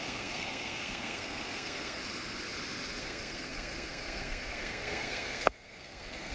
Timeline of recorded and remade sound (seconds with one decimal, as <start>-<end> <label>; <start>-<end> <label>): 0.0-2.0 remade; 2.0-3.0 recorded; 3.0-6.3 remade